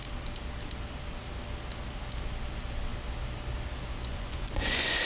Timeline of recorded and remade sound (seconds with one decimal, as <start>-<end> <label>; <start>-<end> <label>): 0.0-4.1 recorded; 4.1-5.0 remade